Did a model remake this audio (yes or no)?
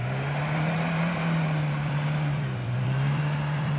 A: yes